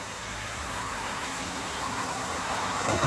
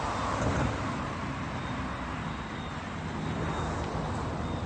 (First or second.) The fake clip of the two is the first